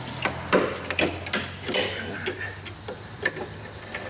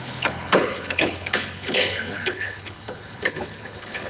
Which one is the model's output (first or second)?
second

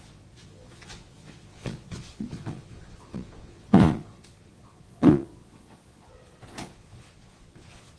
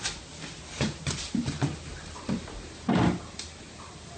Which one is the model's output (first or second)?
first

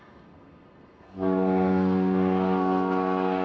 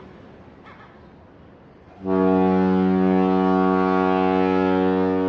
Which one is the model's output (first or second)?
first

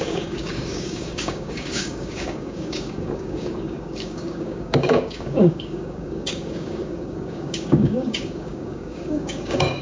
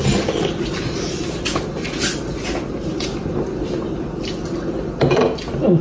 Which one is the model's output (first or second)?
first